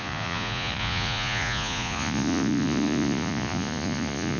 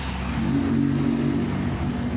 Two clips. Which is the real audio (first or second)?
second